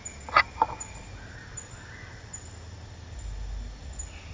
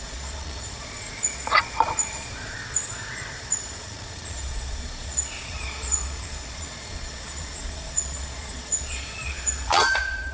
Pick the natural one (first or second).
first